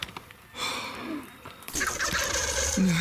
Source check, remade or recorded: recorded